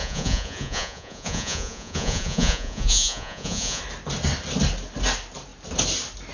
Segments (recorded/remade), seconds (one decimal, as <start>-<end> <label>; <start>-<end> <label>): 0.0-3.8 remade; 3.8-6.3 recorded